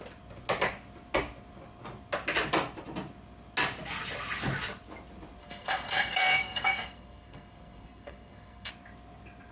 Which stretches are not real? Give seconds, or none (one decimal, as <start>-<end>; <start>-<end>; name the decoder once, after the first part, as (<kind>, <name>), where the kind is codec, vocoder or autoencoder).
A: 5.4-8.7 (codec, SNAC)